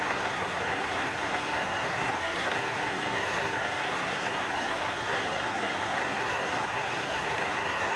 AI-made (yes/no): yes